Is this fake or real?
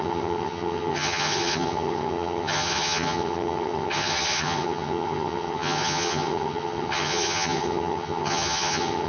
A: fake